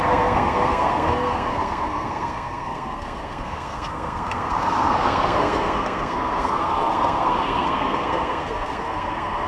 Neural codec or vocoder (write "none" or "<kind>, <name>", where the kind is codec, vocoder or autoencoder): codec, SNAC